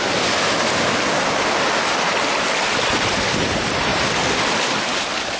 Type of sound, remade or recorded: recorded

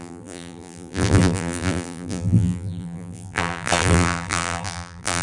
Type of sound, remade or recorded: remade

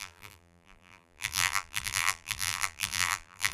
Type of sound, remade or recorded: remade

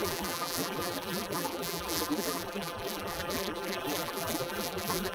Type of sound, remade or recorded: remade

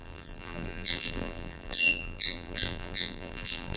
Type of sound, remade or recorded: remade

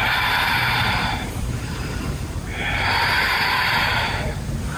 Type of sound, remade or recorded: remade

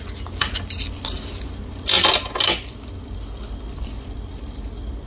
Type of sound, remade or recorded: recorded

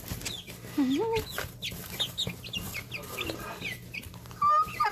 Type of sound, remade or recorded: recorded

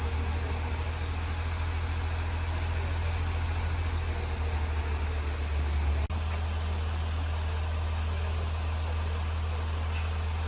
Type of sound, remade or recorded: recorded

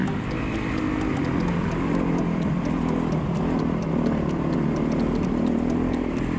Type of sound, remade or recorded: recorded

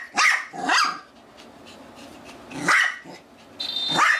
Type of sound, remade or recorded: recorded